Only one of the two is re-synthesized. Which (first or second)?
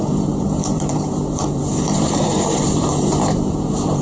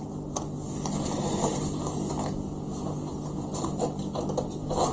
first